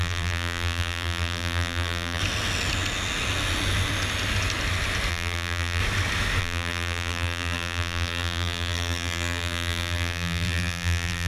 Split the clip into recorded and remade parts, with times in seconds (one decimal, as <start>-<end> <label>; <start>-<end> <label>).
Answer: 0.0-2.2 remade; 2.2-5.1 recorded; 5.1-5.8 remade; 5.8-6.4 recorded; 6.4-11.3 remade